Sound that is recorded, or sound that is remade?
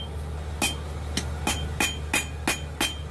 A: recorded